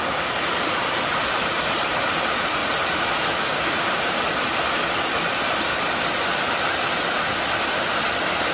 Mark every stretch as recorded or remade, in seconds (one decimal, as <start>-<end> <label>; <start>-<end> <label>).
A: 0.0-8.5 recorded

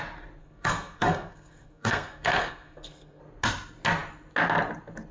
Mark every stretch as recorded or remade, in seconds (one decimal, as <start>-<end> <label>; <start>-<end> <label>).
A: 0.0-0.4 recorded; 0.4-3.2 remade; 3.2-5.1 recorded